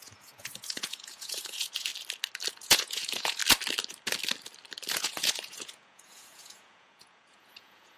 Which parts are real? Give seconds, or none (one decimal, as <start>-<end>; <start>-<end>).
1.9-2.5; 3.4-4.9